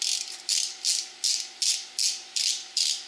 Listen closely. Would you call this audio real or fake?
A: real